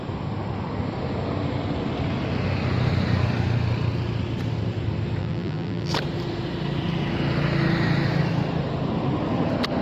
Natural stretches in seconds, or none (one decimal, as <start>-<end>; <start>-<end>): 0.0-5.2; 5.9-9.8